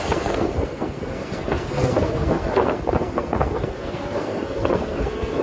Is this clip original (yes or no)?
no